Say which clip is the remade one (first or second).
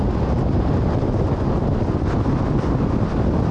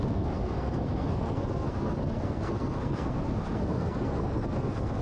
second